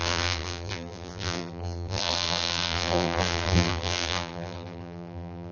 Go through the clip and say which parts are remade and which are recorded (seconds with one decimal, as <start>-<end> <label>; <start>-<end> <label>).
0.0-5.5 remade